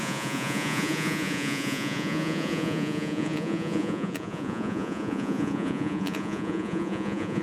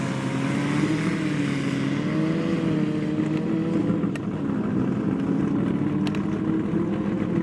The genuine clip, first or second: second